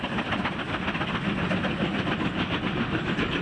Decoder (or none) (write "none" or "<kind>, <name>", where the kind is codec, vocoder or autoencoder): none